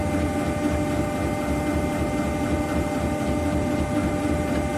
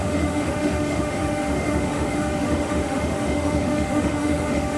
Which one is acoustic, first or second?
first